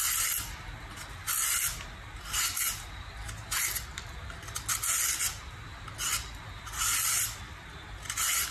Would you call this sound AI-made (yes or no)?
no